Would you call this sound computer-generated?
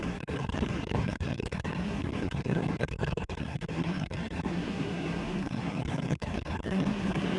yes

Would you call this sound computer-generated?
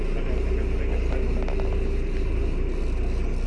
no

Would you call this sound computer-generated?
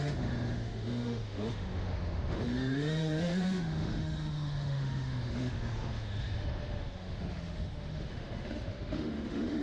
yes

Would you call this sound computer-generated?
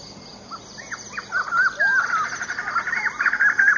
no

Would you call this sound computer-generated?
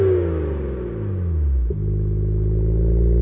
no